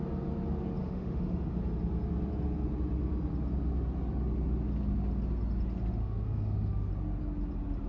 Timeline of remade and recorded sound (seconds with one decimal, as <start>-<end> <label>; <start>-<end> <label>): 0.0-0.8 recorded; 0.8-1.5 remade; 1.5-6.0 recorded; 6.0-6.9 remade; 6.9-7.9 recorded